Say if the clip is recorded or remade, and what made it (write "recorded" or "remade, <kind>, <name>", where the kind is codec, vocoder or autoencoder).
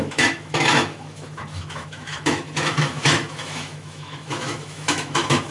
remade, autoencoder, DAC-VAE